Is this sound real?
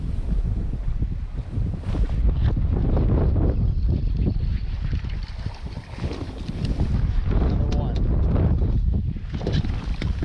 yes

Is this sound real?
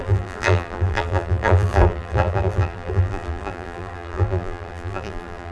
no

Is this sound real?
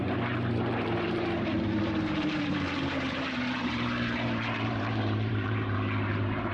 no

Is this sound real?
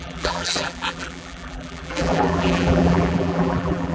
no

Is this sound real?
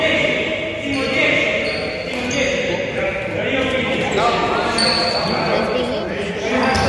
yes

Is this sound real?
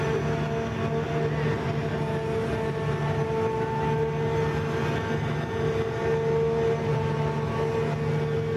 yes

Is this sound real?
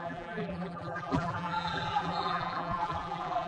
no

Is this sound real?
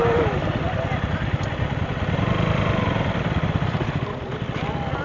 no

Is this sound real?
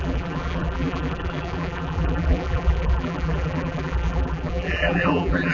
no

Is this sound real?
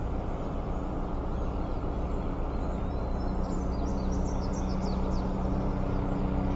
yes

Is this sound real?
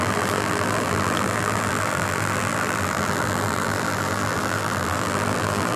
no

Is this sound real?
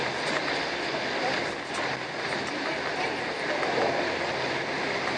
yes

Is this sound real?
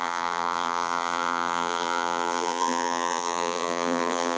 no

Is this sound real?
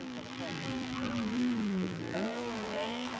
no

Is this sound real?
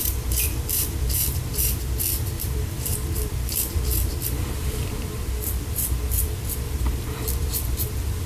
no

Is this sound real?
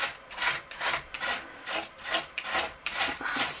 no